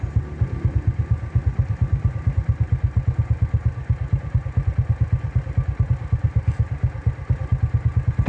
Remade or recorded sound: recorded